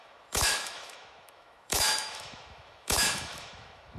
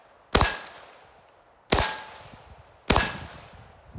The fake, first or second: first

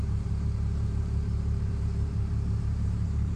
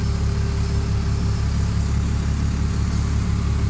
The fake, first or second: first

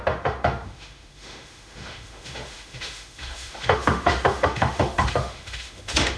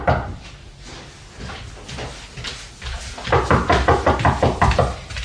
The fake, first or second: first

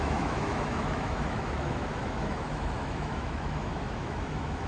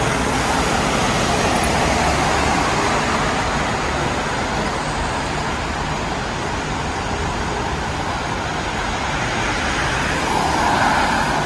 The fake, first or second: first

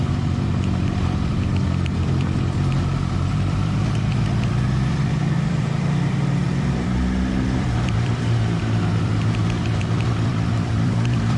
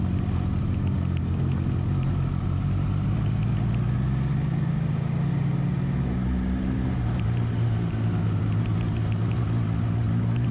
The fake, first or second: first